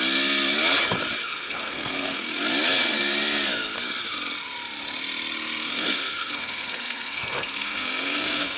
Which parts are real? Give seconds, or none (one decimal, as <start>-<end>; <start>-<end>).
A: 0.0-1.3; 2.3-5.7